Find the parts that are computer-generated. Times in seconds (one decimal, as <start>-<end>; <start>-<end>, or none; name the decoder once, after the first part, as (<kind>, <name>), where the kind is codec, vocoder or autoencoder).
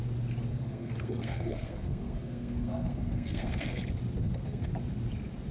0.5-3.8 (codec, SNAC); 4.2-4.7